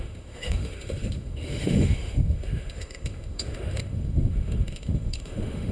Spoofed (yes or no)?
yes